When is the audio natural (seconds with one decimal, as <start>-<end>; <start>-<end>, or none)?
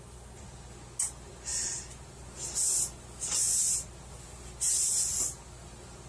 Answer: 0.0-6.1